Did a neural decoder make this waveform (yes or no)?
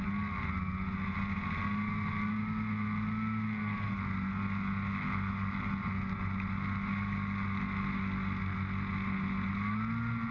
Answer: no